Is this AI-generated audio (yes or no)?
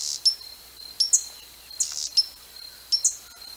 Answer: no